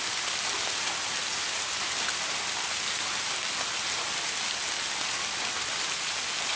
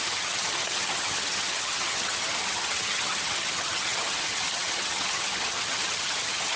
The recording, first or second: first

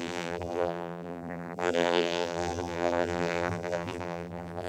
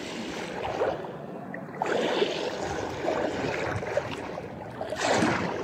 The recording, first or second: second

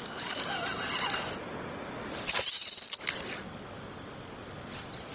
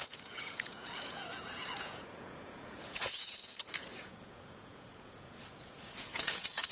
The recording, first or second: first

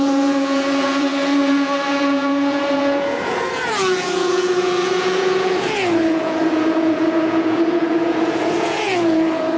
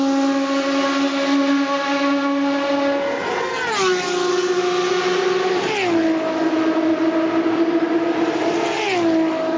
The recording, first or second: second